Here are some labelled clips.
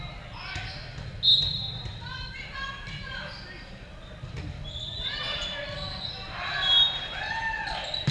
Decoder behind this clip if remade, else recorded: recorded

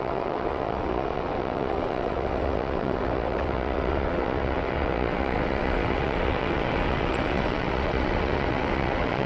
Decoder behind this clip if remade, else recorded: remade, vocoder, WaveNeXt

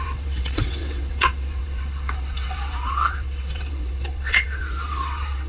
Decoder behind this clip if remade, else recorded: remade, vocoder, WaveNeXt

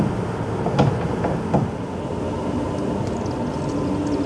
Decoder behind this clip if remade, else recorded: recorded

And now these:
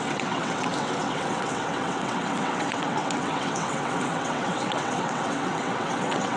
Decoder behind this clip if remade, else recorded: remade, vocoder, WaveNeXt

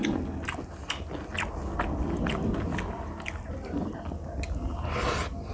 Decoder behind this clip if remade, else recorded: recorded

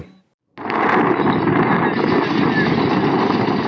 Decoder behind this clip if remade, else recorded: recorded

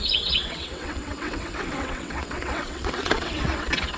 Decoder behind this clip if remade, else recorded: remade, vocoder, WaveNeXt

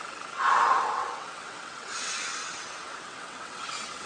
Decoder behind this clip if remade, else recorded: remade, vocoder, WaveNeXt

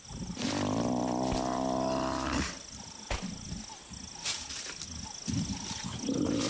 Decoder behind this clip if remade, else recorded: recorded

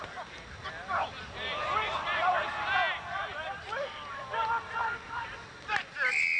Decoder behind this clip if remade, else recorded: recorded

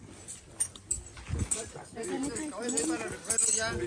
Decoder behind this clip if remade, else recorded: recorded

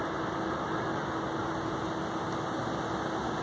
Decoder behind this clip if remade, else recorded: recorded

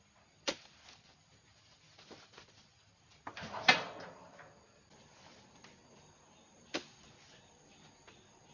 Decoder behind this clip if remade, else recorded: recorded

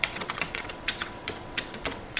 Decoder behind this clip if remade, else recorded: remade, vocoder, WaveNeXt